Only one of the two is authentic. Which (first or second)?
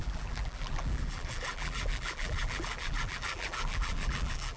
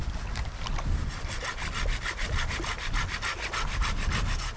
second